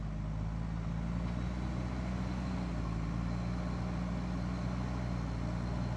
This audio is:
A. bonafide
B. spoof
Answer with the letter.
A